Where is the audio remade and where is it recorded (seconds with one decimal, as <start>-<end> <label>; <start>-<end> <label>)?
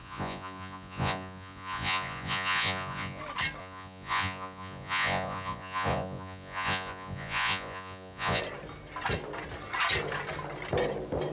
0.0-3.2 remade; 3.2-3.6 recorded; 3.6-8.4 remade; 8.4-11.3 recorded